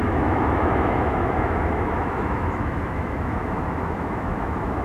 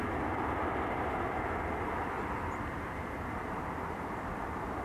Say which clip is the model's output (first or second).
first